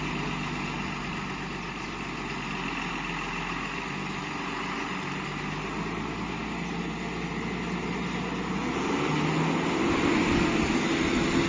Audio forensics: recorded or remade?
recorded